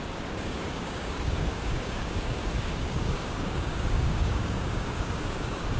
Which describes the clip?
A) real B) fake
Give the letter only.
B